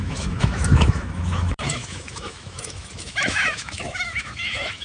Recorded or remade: remade